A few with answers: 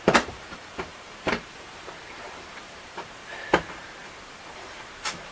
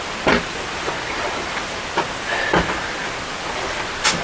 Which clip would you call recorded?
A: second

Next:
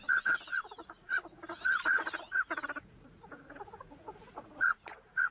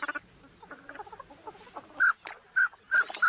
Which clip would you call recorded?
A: second